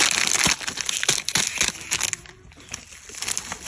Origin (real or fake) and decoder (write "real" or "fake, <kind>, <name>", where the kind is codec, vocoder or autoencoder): real